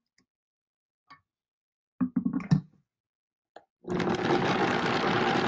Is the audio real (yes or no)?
yes